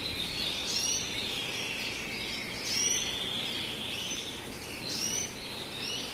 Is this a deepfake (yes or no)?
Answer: yes